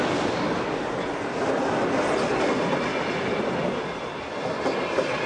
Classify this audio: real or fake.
real